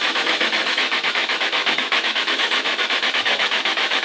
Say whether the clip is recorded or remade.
remade